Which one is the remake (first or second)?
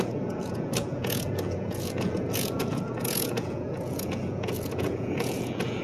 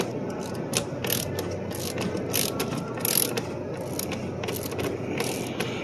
first